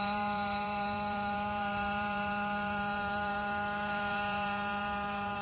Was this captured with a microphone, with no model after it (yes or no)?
no